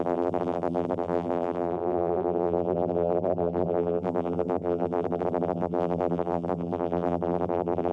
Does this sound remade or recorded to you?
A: remade